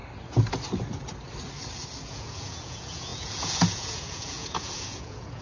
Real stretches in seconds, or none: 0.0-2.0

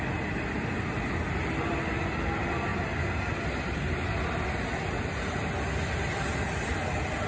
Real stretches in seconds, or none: 0.0-7.3

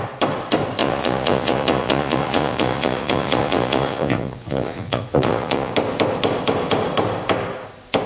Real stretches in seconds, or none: 0.0-0.8; 5.7-8.1